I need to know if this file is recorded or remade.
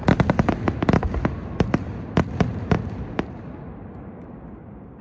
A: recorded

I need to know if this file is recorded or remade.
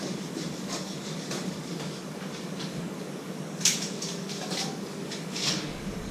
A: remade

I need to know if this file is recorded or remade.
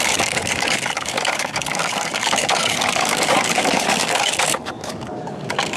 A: remade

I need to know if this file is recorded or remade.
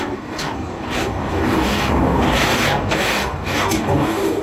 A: remade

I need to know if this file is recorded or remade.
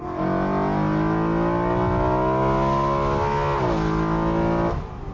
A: recorded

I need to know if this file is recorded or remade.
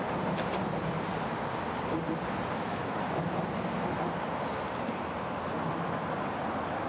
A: recorded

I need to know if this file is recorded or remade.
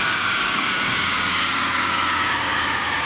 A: remade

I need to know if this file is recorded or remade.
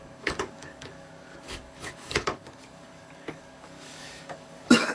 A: remade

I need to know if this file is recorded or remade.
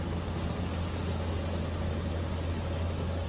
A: recorded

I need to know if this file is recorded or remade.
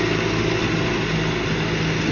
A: recorded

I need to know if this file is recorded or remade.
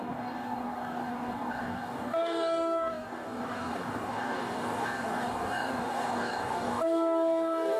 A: remade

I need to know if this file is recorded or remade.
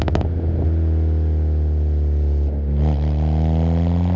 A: recorded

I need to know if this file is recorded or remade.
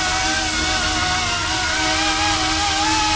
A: recorded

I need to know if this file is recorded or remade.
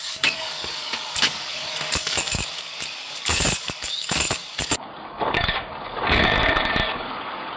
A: remade